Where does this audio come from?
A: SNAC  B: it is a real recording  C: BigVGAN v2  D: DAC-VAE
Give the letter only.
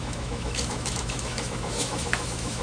D